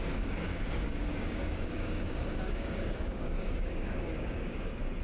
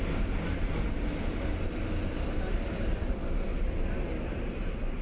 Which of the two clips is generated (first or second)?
first